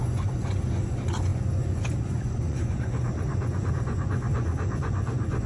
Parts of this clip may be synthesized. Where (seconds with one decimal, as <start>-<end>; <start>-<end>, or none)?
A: 0.0-5.5